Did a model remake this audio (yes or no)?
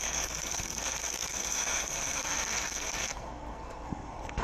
yes